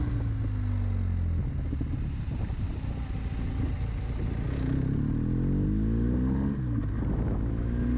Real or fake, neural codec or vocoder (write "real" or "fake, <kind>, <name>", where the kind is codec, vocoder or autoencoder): real